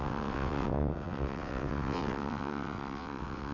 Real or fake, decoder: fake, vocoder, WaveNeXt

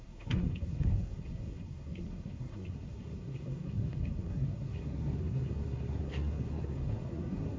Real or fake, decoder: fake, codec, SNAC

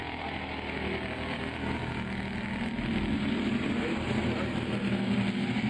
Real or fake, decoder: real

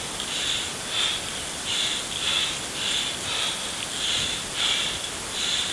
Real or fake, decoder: real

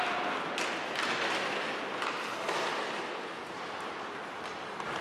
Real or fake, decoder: real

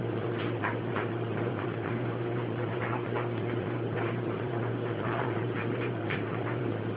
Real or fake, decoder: fake, vocoder, Vocos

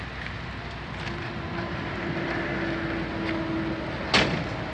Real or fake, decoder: real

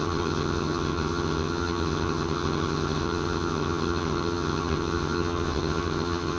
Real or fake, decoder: fake, vocoder, HiFi-GAN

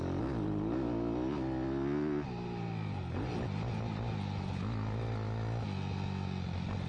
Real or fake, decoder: real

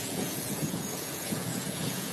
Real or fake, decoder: fake, vocoder, Vocos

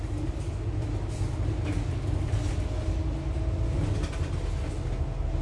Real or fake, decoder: real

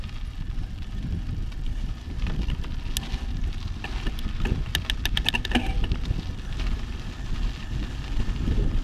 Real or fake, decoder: real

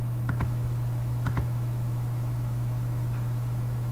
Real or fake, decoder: fake, autoencoder, DAC-VAE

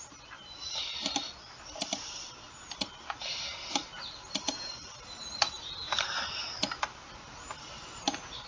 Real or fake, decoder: real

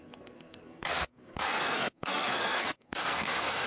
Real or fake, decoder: fake, codec, SNAC